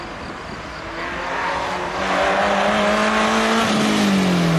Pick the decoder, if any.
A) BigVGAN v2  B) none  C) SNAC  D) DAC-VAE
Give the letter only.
B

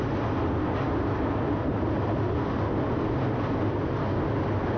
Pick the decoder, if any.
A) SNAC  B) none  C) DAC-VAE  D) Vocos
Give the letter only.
B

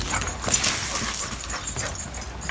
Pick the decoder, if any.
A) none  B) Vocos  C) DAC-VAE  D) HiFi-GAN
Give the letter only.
A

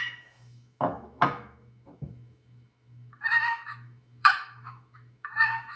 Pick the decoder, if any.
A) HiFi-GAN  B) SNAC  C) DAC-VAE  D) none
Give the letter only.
C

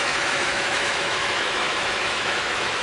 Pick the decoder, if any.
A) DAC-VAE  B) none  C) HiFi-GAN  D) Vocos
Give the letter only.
A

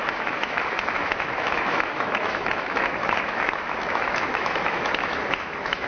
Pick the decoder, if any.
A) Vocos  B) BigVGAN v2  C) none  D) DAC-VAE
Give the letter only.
D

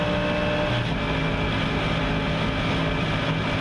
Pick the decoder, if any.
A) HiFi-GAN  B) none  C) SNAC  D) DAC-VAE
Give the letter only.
B